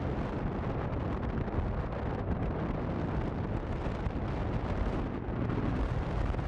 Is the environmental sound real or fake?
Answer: real